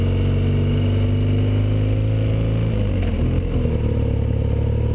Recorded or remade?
recorded